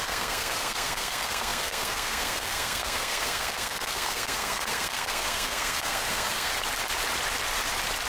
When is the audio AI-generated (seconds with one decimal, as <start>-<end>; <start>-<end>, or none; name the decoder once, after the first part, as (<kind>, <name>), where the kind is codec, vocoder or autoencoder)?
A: 0.0-6.5 (codec, SNAC)